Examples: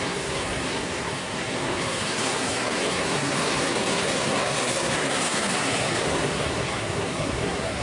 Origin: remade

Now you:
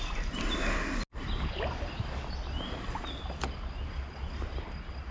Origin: recorded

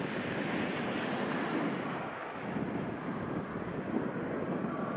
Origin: recorded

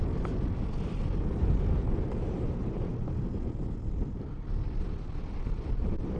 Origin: recorded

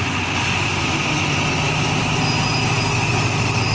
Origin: recorded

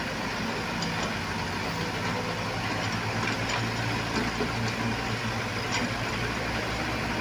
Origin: recorded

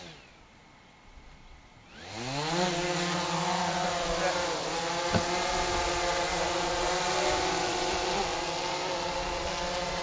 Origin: recorded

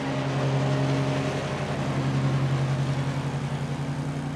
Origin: recorded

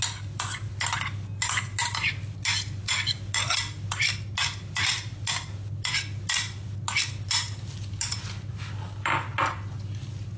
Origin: recorded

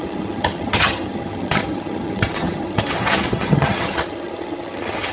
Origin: remade